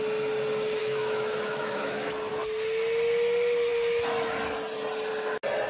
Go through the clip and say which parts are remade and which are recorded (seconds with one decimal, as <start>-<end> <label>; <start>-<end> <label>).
0.0-0.8 recorded; 0.8-2.3 remade; 2.3-5.7 recorded